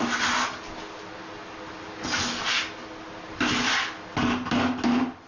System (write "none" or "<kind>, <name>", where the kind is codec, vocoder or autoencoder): none